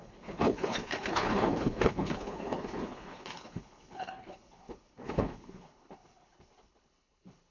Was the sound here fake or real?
fake